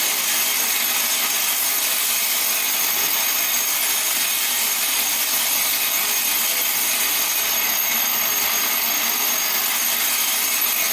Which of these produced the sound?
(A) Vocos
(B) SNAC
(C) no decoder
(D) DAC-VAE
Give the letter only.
C